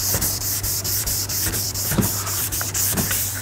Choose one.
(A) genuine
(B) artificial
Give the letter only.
B